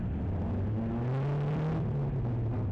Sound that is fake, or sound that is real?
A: real